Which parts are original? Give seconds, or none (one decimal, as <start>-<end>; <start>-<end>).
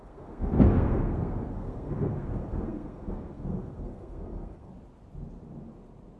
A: 4.7-6.2